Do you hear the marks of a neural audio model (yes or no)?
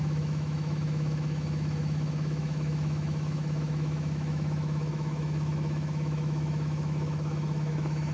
yes